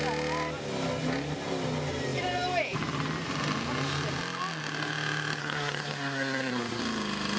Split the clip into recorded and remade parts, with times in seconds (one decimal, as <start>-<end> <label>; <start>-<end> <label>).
0.0-5.4 recorded; 5.4-6.8 remade; 6.8-7.4 recorded